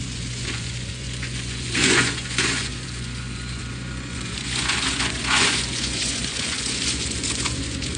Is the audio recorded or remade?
remade